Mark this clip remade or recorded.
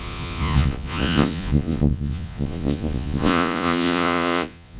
remade